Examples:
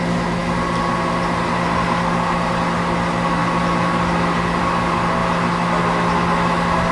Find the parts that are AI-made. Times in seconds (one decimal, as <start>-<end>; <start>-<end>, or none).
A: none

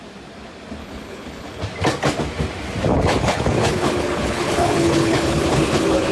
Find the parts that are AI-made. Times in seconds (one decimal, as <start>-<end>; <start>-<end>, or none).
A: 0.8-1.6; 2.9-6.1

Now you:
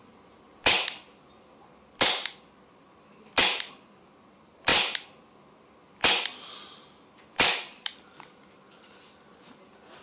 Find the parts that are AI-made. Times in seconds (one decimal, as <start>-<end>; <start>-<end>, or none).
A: none

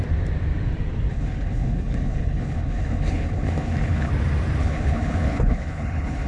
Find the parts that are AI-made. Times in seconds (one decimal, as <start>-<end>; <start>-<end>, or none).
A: 1.1-4.1; 4.6-6.3

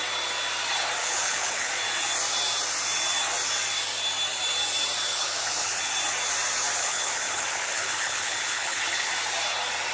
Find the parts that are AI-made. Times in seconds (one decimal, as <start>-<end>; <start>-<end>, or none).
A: 1.0-1.7; 5.1-5.8; 6.8-9.1